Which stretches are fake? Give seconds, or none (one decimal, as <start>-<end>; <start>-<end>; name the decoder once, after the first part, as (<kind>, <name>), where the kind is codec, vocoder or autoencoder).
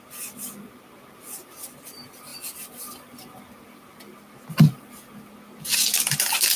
none